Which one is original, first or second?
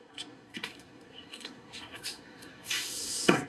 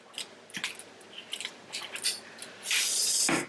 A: second